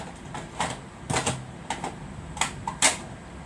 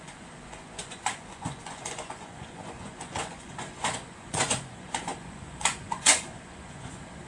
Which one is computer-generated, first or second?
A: second